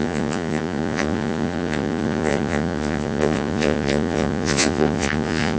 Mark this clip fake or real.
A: fake